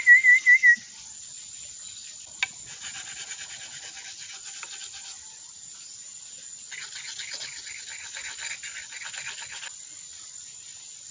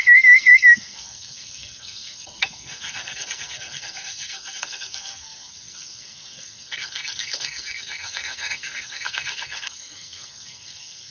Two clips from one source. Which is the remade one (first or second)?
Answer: second